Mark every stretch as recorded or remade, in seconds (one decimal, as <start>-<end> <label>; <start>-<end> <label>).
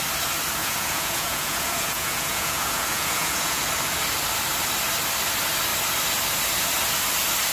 0.0-0.6 recorded; 0.6-3.6 remade; 3.6-7.5 recorded